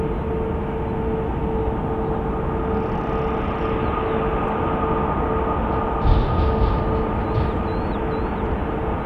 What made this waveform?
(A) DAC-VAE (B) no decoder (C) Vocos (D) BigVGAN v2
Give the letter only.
B